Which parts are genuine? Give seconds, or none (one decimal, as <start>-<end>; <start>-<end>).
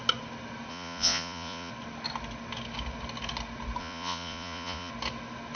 0.0-0.7; 1.7-3.8; 4.9-5.6